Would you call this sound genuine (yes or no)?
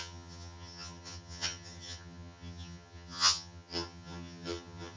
no